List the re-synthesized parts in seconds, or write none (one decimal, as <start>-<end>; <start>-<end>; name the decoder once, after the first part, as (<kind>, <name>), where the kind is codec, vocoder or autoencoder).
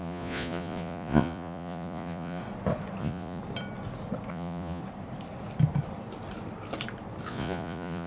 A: 0.0-2.4 (vocoder, Vocos); 3.0-3.4; 4.3-4.8; 7.3-8.1